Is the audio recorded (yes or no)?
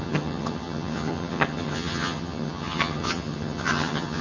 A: no